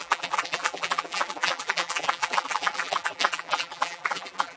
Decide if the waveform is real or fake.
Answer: fake